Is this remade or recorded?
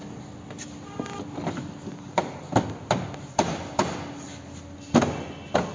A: recorded